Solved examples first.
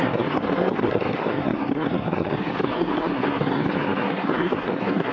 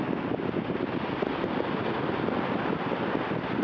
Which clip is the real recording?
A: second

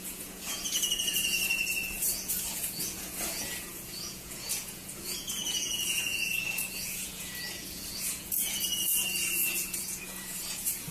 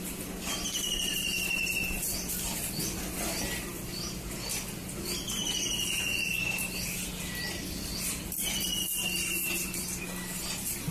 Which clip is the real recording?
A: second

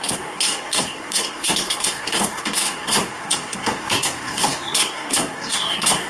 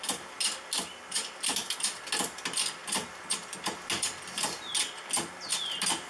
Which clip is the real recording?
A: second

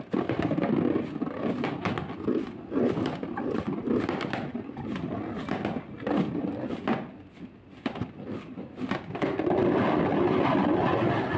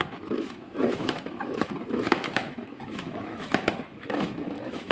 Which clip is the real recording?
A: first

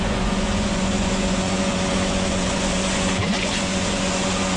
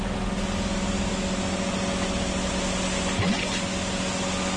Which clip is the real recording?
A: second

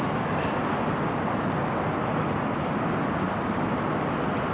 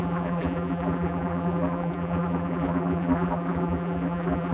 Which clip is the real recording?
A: first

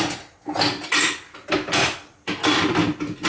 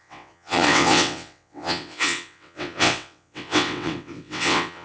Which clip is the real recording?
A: first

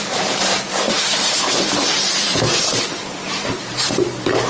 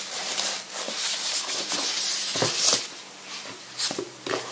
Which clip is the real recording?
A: second